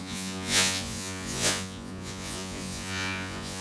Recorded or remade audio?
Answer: remade